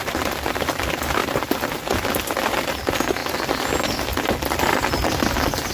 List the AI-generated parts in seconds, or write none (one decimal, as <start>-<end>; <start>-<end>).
none